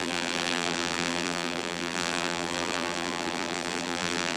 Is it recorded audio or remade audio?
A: remade